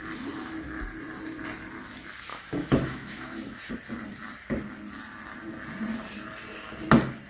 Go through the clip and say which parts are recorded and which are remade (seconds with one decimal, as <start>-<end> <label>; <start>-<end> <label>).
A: 0.0-2.3 recorded; 2.3-3.7 remade; 3.7-7.3 recorded